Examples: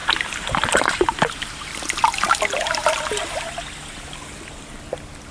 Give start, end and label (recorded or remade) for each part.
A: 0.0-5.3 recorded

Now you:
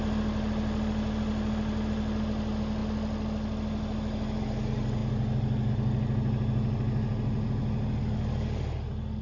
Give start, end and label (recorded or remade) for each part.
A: 0.0-9.2 recorded

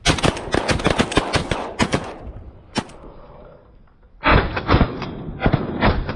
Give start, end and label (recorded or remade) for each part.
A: 0.0-1.4 recorded; 1.4-2.2 remade; 2.2-4.3 recorded; 4.3-5.0 remade; 5.0-6.2 recorded

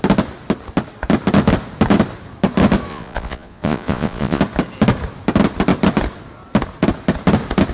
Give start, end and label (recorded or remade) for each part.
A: 0.0-2.9 recorded; 2.9-4.4 remade; 4.4-7.7 recorded

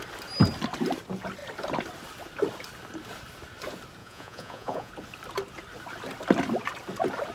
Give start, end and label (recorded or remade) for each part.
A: 0.0-4.0 recorded; 4.0-4.9 remade; 4.9-7.3 recorded